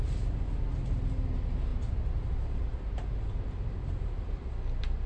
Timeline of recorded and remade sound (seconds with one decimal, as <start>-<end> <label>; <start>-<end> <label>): 0.0-5.1 recorded